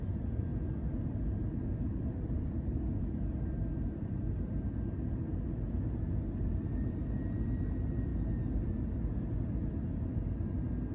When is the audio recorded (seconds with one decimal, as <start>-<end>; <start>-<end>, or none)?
0.0-0.5; 5.0-6.2; 6.9-8.1; 8.7-10.9